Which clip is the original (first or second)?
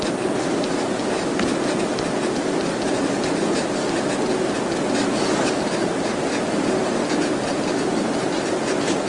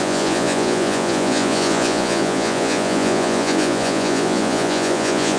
first